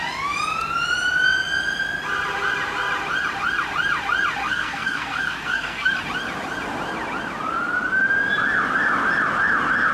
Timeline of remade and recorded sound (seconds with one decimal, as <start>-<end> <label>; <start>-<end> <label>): 0.0-4.4 recorded; 4.4-6.0 remade; 6.0-9.9 recorded